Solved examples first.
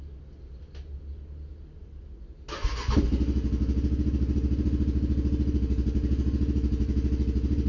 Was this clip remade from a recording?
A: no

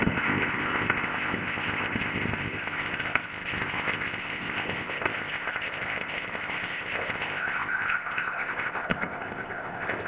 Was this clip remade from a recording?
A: yes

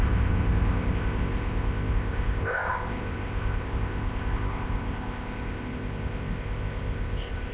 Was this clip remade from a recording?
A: yes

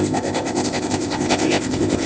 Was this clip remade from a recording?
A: yes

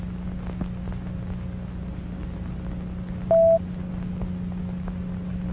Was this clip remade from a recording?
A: no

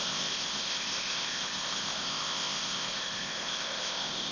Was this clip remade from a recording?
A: yes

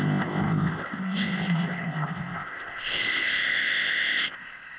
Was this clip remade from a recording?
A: yes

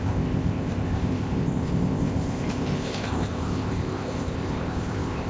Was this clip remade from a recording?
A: yes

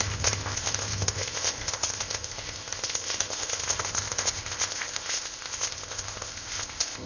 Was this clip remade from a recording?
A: yes